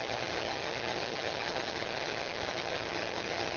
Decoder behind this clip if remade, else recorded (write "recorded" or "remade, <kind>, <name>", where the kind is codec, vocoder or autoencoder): remade, vocoder, HiFi-GAN